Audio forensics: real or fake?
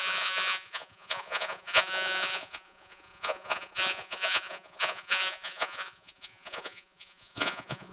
fake